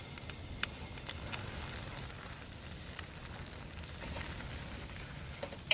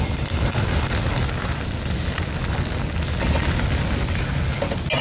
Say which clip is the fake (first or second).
first